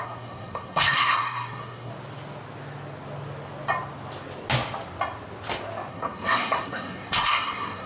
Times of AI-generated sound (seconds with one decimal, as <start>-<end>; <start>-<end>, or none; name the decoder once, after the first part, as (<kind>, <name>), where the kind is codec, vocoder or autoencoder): 0.0-1.9 (codec, SNAC); 5.9-7.9